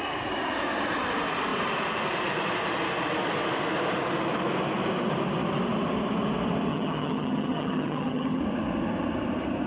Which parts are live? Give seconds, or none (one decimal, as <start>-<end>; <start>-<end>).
0.0-6.7; 8.4-9.7